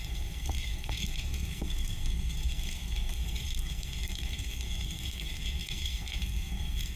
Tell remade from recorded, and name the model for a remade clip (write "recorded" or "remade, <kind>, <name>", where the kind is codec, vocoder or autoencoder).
remade, codec, SNAC